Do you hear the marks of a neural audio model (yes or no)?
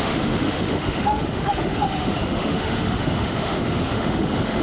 yes